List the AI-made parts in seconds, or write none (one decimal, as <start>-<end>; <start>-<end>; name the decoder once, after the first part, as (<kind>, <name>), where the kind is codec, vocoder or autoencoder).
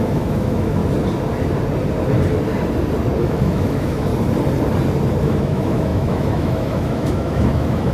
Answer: 0.0-0.8 (autoencoder, DAC-VAE); 3.2-4.1; 5.2-7.9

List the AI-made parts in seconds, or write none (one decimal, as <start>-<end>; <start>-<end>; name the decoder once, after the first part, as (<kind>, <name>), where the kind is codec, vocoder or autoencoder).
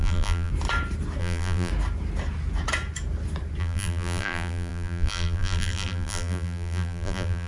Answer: 0.0-0.5 (vocoder, BigVGAN v2); 1.2-1.7; 3.6-7.5